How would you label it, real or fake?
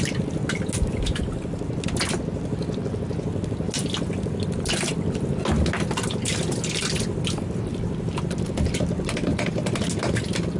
real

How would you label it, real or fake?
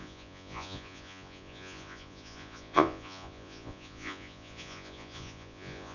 fake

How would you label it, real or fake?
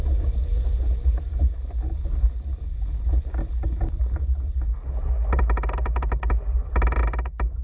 real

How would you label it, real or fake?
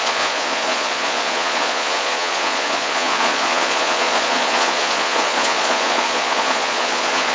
fake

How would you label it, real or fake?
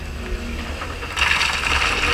real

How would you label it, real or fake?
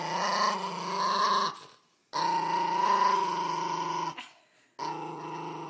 real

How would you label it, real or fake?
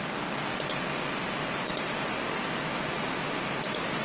real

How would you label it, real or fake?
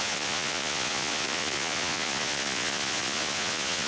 fake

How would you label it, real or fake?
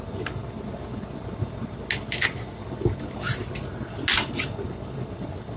real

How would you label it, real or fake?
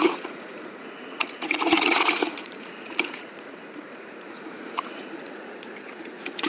fake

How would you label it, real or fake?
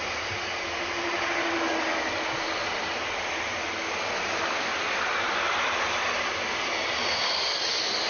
real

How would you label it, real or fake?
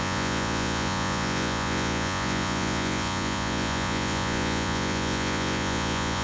fake